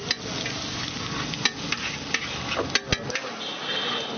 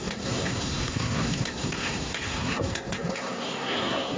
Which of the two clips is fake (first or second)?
second